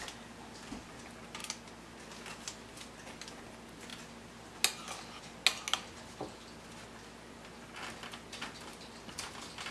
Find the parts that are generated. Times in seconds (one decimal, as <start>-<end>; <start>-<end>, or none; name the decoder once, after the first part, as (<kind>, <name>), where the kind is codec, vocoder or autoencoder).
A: none